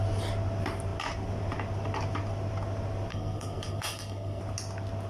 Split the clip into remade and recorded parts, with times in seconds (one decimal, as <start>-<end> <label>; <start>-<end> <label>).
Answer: 0.0-3.1 recorded; 3.1-4.4 remade; 4.4-5.1 recorded